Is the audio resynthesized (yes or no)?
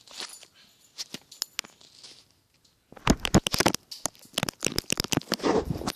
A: no